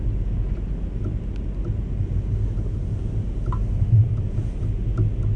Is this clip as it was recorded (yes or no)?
yes